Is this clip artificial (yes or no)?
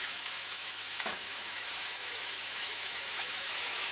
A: yes